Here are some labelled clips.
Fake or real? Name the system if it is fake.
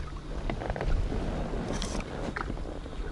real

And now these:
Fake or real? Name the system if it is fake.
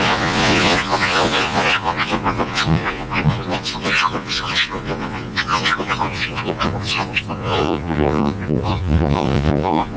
fake, vocoder, Vocos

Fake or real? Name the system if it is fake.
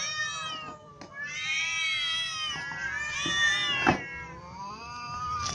real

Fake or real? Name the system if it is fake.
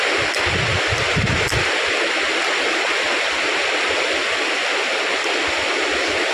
real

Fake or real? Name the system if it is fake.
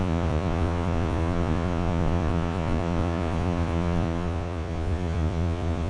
fake, vocoder, Vocos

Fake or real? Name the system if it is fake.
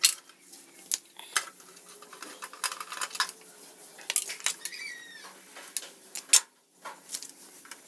real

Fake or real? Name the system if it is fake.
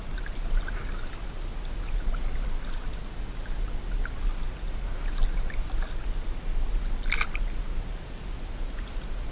real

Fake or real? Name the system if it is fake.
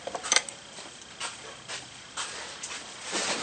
real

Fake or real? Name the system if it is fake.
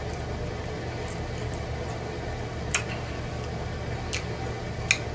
real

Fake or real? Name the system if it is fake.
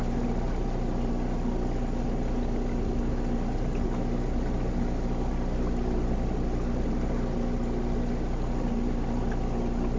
real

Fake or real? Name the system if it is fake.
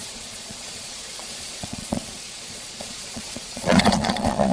fake, vocoder, Vocos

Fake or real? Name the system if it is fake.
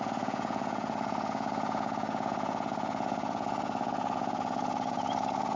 fake, vocoder, Vocos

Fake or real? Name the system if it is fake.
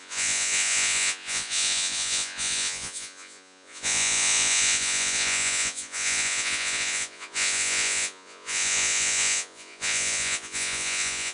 fake, vocoder, Vocos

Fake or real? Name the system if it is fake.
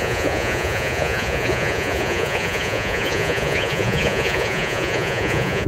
fake, vocoder, Vocos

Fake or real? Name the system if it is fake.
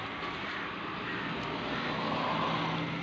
real